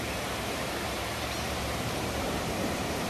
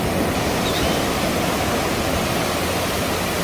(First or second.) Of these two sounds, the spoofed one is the first